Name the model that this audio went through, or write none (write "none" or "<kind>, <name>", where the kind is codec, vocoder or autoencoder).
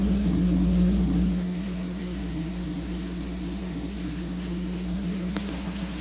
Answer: codec, SNAC